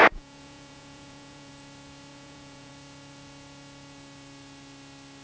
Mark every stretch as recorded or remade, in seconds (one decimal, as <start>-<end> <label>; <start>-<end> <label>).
0.0-1.5 remade; 1.5-2.1 recorded; 2.1-2.7 remade; 2.7-5.2 recorded